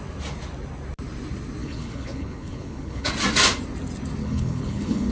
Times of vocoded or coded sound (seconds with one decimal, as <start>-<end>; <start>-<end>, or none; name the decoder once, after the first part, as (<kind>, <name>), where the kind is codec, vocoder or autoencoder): 1.6-3.1 (codec, HILCodec); 4.2-5.1